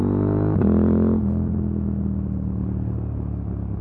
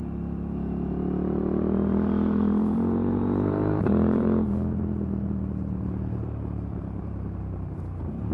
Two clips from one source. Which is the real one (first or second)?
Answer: first